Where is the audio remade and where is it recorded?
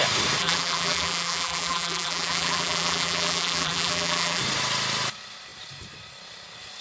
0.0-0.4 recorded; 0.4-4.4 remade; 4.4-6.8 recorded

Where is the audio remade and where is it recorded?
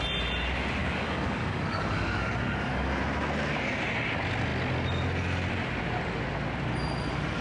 0.0-0.8 recorded; 0.8-3.0 remade; 3.0-7.4 recorded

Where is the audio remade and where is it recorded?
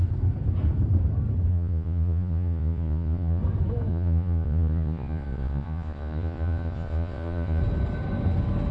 0.0-1.5 recorded; 1.5-3.4 remade; 3.4-3.9 recorded; 3.9-7.6 remade; 7.6-8.7 recorded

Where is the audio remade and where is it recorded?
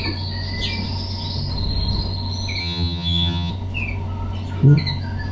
0.0-2.6 recorded; 2.6-3.5 remade; 3.5-5.3 recorded